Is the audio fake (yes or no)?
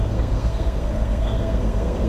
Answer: yes